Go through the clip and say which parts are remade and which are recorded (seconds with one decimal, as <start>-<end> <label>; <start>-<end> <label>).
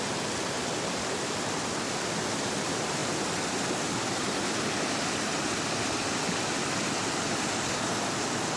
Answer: 0.0-8.6 recorded